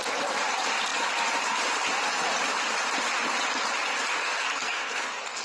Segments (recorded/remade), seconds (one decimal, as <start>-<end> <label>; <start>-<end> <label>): 0.0-4.2 recorded; 4.2-5.4 remade